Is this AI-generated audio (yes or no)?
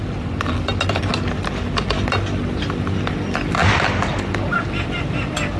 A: no